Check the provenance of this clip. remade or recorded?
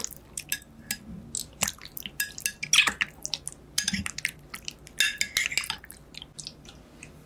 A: recorded